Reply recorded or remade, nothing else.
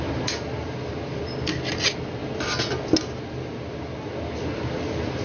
recorded